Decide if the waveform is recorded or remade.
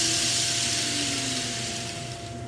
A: recorded